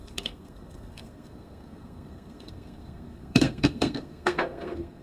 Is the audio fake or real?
fake